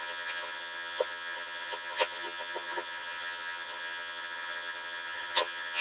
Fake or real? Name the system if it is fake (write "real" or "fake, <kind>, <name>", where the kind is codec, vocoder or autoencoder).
fake, vocoder, HiFi-GAN